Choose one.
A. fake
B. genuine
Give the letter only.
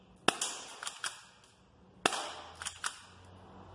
B